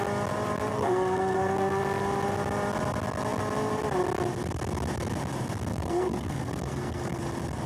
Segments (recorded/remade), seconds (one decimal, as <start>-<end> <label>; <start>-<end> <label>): 0.0-0.7 recorded; 0.7-1.8 remade; 1.8-5.7 recorded; 5.7-7.2 remade; 7.2-7.7 recorded